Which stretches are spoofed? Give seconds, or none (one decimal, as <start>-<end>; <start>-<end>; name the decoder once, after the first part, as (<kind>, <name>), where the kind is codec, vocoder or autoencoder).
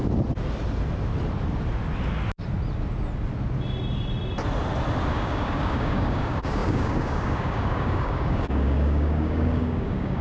5.1-10.2 (codec, DAC)